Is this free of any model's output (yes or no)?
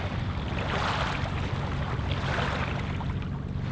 yes